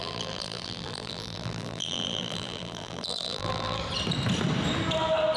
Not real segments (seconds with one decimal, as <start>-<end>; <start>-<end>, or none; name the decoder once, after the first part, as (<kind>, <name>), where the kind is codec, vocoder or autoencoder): 0.0-3.8 (vocoder, BigVGAN v2)